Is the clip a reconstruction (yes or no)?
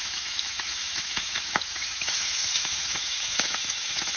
yes